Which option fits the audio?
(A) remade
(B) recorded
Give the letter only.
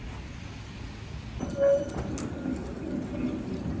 B